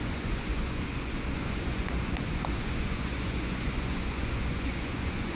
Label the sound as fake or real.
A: fake